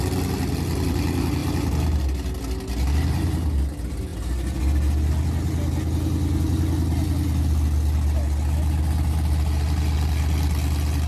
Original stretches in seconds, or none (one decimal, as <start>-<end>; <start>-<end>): 0.0-11.1